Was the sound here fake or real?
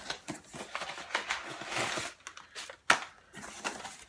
real